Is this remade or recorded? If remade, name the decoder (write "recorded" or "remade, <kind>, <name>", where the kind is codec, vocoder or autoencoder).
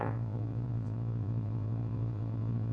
remade, vocoder, Vocos